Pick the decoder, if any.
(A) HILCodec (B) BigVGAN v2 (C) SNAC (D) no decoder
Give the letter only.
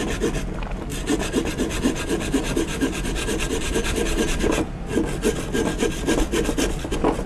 D